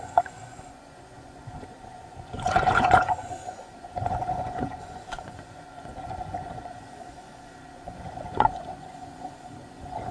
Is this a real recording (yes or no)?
no